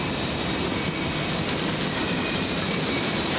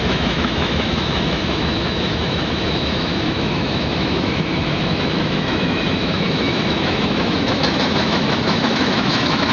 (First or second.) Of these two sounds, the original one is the first